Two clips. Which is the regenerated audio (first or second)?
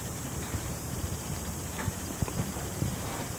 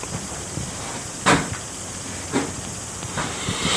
first